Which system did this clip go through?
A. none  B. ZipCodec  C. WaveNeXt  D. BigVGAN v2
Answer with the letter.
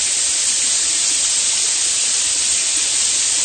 A